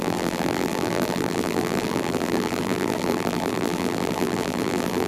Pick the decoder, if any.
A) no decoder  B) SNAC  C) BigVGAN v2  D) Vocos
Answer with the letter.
C